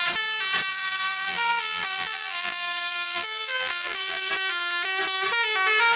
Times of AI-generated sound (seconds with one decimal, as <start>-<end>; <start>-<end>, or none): 0.7-4.3